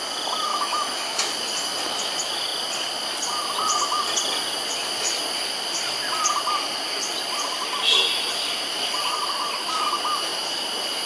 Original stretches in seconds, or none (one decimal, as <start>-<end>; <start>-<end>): 0.0-0.5; 1.2-11.1